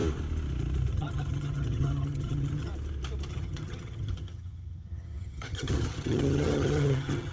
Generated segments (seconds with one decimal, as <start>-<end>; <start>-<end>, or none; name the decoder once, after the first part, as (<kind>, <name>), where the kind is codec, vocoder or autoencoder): 0.9-2.7 (vocoder, HiFi-GAN); 3.3-7.3